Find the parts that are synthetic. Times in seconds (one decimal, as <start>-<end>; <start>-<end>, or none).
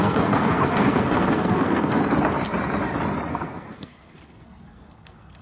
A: 0.0-2.0; 3.3-5.4